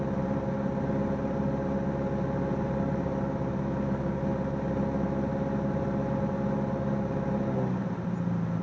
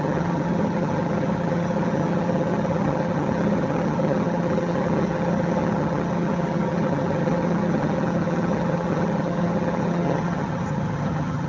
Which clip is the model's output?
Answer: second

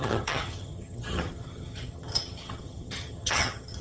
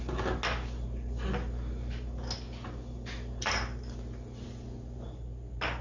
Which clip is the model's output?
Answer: first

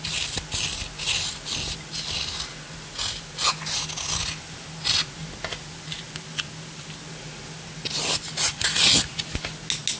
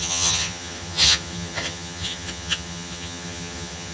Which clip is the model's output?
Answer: second